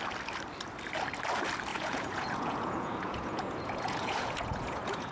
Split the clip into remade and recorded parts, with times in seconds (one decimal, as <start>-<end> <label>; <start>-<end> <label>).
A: 0.0-1.7 recorded; 1.7-5.1 remade